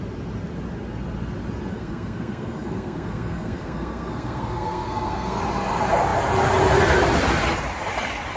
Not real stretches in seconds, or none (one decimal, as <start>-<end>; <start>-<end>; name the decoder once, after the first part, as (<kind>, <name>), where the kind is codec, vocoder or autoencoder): 1.7-5.4 (codec, SNAC)